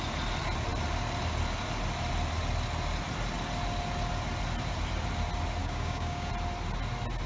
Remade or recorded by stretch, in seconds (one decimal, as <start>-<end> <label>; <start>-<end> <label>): 0.0-5.6 recorded; 5.6-6.3 remade; 6.3-7.3 recorded